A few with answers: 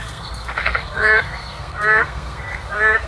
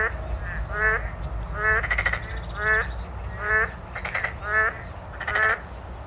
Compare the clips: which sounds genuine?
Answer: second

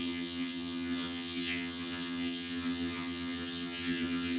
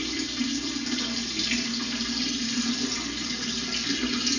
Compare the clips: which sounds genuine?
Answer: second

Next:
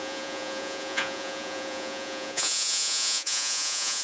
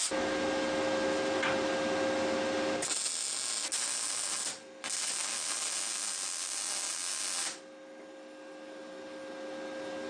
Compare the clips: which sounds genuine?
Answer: second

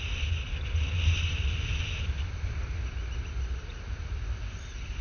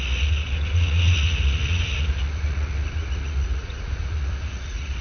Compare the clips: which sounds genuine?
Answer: first